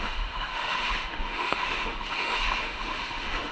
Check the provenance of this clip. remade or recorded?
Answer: remade